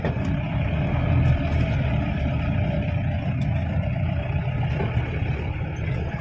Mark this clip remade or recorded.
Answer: recorded